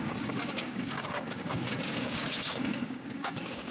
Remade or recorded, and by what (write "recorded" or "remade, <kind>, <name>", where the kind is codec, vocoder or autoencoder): remade, codec, DAC